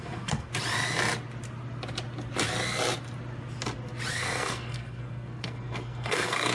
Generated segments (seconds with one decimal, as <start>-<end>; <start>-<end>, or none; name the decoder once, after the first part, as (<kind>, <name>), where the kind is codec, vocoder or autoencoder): 0.0-0.5 (codec, SNAC); 4.1-6.5

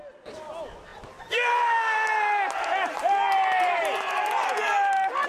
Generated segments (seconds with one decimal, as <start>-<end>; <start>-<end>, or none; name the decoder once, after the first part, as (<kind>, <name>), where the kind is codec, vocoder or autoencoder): none

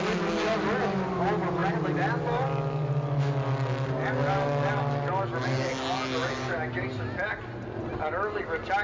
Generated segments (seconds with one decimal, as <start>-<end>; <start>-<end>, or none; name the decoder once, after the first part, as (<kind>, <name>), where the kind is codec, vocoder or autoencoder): none

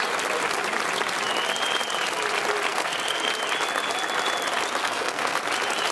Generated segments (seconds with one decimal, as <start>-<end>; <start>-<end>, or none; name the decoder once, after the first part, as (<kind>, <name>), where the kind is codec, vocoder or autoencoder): 2.7-3.3 (codec, SNAC); 4.8-5.4

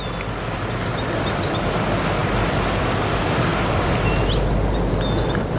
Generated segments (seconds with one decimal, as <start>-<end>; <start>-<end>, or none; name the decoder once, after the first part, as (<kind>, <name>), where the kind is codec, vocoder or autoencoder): none

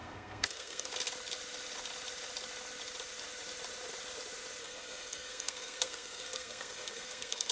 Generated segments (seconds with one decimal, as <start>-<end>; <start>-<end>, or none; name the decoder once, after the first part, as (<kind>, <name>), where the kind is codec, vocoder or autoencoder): 0.0-0.9 (codec, SNAC); 4.6-7.5